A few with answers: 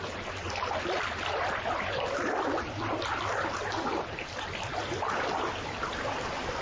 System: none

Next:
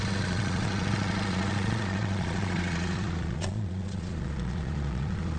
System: vocoder, Vocos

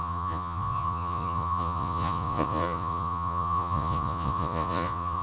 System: vocoder, Vocos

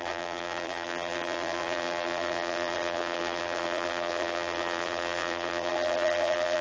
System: vocoder, BigVGAN v2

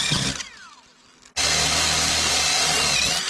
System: none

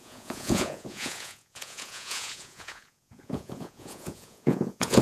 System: vocoder, Vocos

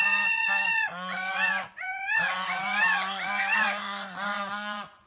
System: vocoder, Vocos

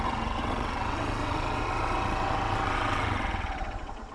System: vocoder, WaveNeXt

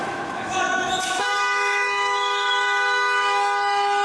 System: autoencoder, DAC-VAE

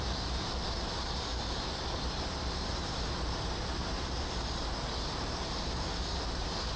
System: vocoder, BigVGAN v2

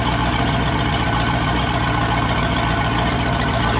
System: none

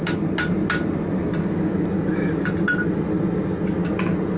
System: none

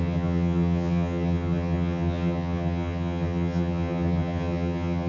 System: vocoder, HiFi-GAN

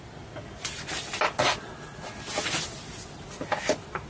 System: none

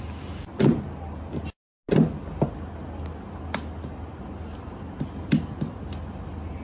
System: none